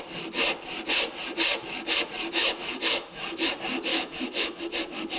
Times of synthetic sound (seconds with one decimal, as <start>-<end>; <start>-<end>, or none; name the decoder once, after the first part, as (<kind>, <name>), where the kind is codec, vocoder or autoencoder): 2.4-3.5 (autoencoder, DAC-VAE); 3.9-4.6